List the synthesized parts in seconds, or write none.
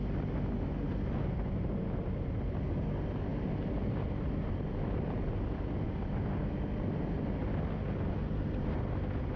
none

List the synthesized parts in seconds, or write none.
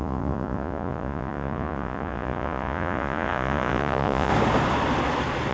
0.0-4.3 (vocoder, Vocos)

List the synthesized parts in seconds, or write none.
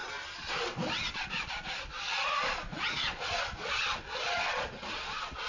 1.9-5.5 (vocoder, Vocos)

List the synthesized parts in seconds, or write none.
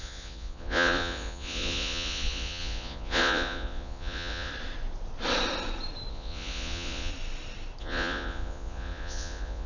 0.0-4.5 (vocoder, Vocos); 6.1-7.1; 7.8-9.7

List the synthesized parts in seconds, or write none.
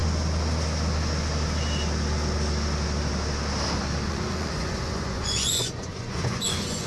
4.1-6.9 (vocoder, Vocos)